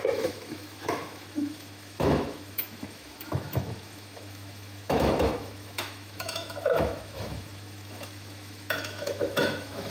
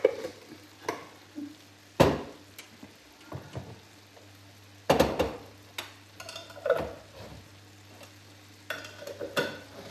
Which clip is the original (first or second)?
second